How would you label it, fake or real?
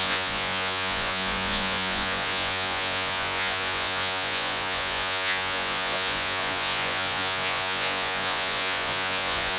fake